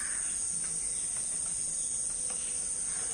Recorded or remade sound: recorded